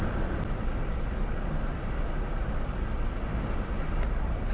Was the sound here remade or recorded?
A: recorded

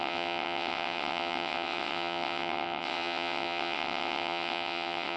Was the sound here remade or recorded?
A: remade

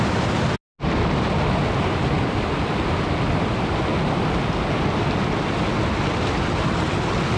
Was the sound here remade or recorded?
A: recorded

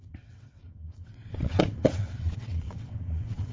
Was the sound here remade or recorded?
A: remade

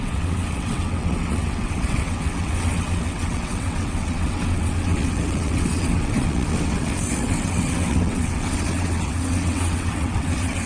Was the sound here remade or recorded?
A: remade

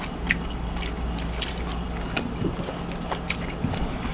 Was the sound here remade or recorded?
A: recorded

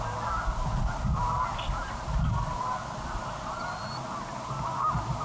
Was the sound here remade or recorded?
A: recorded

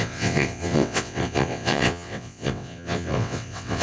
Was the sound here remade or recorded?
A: remade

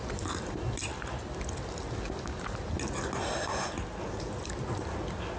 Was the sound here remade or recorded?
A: recorded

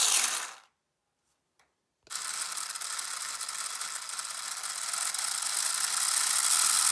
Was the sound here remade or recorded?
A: recorded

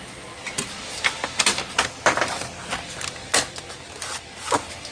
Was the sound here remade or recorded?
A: recorded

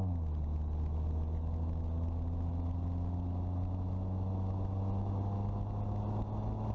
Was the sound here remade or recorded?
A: recorded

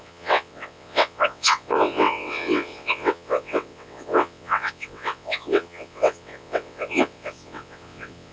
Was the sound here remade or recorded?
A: remade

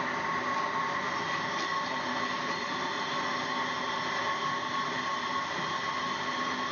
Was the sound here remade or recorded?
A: recorded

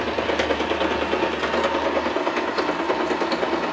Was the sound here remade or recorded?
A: recorded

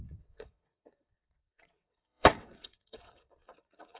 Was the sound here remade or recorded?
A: remade